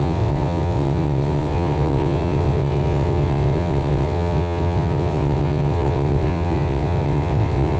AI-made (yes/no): yes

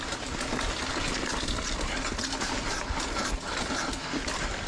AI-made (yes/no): no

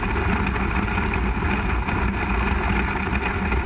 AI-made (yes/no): no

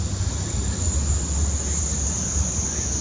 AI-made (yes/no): no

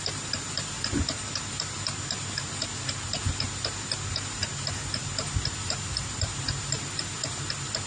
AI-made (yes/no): no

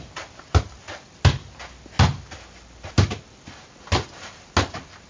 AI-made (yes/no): no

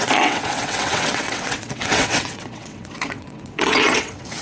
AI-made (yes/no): yes